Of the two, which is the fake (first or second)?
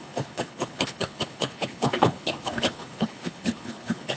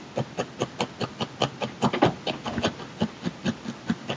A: first